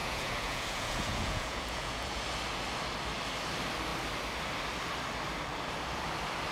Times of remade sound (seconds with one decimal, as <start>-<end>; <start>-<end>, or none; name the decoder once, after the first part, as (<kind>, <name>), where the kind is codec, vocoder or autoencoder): 0.0-2.2 (vocoder, Vocos)